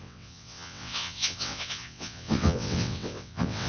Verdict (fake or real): fake